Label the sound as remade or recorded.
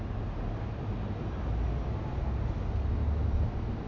recorded